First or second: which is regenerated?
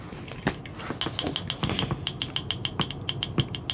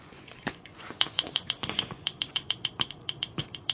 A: second